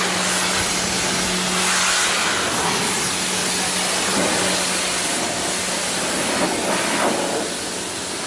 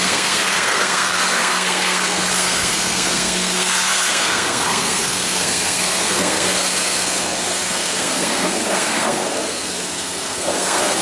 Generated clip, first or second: second